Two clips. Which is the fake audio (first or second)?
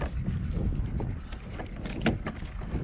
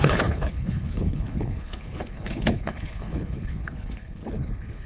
second